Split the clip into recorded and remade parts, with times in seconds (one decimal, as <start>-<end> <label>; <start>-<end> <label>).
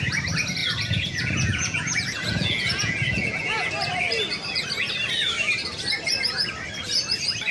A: 0.0-0.6 recorded; 0.6-3.7 remade; 3.7-7.5 recorded